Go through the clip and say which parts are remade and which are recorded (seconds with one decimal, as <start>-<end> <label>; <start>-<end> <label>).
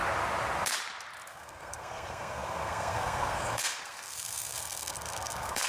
0.0-1.3 recorded; 1.3-5.7 remade